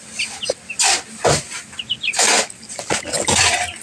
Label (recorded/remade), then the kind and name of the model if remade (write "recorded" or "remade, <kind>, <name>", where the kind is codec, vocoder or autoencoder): recorded